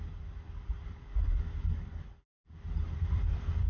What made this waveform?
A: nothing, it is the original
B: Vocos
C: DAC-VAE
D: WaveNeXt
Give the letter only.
A